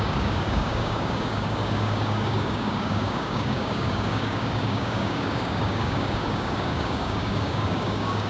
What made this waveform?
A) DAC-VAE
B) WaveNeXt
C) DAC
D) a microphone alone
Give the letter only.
C